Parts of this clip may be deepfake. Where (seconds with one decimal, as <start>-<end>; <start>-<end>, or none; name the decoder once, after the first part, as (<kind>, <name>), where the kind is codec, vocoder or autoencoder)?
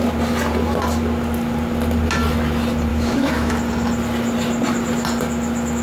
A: 2.9-3.5 (autoencoder, DAC-VAE)